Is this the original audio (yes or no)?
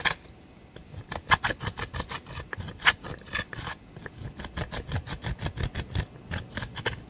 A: yes